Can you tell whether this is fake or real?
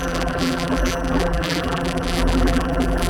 fake